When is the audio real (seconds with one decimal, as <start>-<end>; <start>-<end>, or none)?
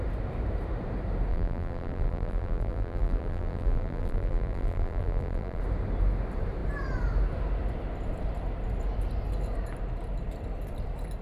0.0-1.3; 5.6-11.2